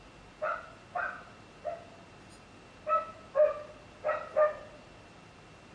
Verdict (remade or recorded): recorded